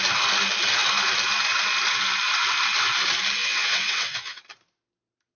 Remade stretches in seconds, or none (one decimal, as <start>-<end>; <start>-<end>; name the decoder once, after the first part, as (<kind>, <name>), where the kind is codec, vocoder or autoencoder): 3.4-4.4 (vocoder, WaveNeXt)